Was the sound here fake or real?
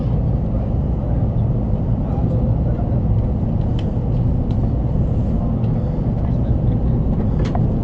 real